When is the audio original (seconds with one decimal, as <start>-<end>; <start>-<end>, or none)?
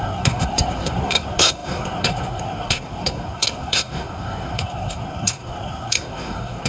none